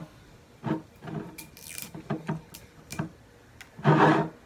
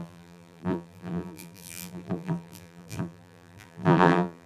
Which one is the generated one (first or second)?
second